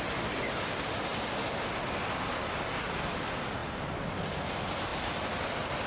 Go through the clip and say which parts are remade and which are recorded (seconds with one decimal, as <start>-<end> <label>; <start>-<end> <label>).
0.0-5.9 recorded